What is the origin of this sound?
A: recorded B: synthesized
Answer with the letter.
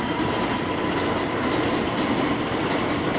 A